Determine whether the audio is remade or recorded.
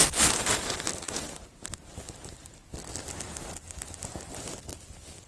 recorded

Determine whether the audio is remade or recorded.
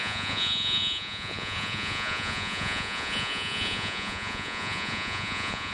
remade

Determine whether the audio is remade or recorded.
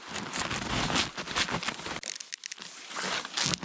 recorded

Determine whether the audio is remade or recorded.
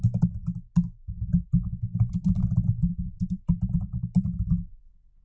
recorded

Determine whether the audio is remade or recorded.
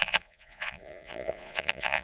remade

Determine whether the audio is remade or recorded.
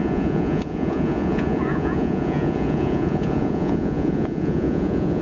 remade